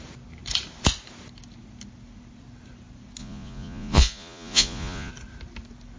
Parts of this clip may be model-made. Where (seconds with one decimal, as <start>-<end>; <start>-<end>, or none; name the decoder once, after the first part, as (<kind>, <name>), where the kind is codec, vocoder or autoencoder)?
3.2-5.1 (vocoder, Vocos)